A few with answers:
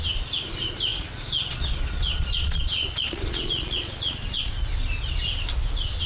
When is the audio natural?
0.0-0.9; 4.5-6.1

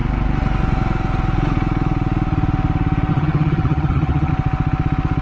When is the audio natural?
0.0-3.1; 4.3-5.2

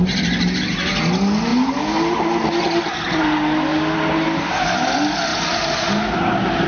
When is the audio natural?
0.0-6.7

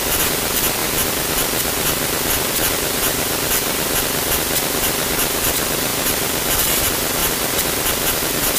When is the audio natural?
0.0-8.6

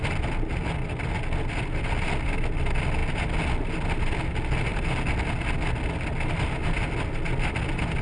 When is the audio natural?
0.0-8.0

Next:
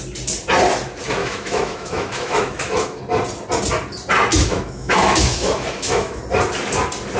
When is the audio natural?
0.0-1.2; 3.0-4.3; 6.2-7.2